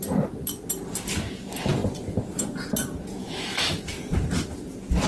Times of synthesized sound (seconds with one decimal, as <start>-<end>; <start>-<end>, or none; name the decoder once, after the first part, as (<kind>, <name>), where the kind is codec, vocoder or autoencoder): 3.2-3.8 (autoencoder, DAC-VAE)